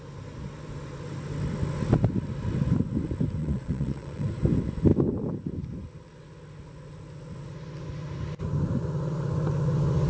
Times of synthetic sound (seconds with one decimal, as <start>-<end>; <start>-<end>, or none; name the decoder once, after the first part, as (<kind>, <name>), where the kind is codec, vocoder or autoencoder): 3.4-4.3 (vocoder, Vocos)

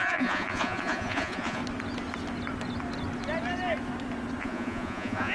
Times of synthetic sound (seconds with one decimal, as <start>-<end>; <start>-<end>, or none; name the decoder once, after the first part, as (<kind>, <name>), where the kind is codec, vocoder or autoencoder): 0.0-1.6 (vocoder, Vocos); 4.4-5.3

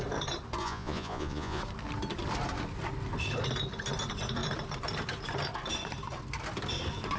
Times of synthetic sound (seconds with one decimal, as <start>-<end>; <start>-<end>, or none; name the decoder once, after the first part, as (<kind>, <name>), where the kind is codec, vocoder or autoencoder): 0.6-1.6 (vocoder, Vocos)

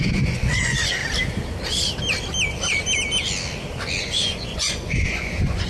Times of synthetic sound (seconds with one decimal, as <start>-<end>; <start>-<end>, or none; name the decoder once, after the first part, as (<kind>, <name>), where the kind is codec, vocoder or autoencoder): 0.0-1.0 (vocoder, Vocos); 4.0-5.7